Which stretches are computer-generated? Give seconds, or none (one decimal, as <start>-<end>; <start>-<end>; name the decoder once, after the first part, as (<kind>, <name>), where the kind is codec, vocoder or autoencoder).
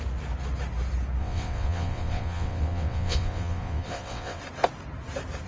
1.2-4.4 (vocoder, WaveNeXt)